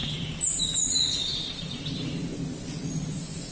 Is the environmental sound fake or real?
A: real